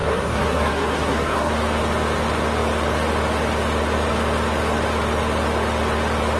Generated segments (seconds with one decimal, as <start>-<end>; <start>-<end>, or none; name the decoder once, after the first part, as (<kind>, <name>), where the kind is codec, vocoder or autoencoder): 0.0-1.5 (codec, SNAC)